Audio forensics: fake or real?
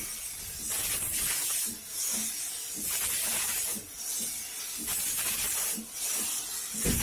real